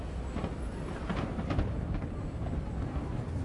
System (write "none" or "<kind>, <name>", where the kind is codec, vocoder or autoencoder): none